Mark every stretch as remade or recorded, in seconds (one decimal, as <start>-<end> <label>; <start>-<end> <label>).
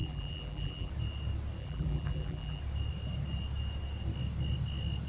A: 0.0-0.9 remade; 0.9-1.6 recorded; 1.6-2.6 remade; 2.6-5.1 recorded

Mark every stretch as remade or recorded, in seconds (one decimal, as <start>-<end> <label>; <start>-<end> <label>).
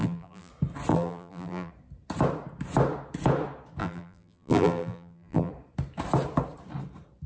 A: 0.0-0.5 remade; 0.5-0.9 recorded; 0.9-1.7 remade; 1.7-3.8 recorded; 3.8-5.5 remade; 5.5-7.3 recorded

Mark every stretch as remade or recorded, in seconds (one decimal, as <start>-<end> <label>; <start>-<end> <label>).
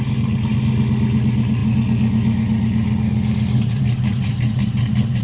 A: 0.0-5.2 recorded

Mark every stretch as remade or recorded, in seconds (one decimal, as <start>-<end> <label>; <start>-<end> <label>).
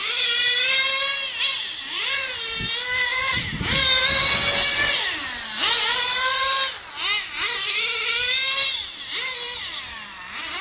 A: 0.0-10.6 recorded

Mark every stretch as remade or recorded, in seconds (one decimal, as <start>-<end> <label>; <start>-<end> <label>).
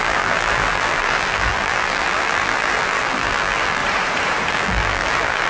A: 0.0-3.8 remade; 3.8-4.5 recorded; 4.5-5.5 remade